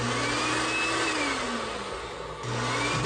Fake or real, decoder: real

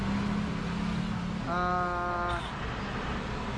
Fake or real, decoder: real